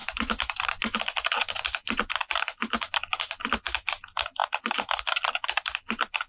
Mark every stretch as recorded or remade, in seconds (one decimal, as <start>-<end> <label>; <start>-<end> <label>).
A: 0.0-0.7 remade; 0.7-4.4 recorded; 4.4-5.0 remade; 5.0-6.3 recorded